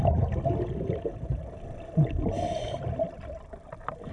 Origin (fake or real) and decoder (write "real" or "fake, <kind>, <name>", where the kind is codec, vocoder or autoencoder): real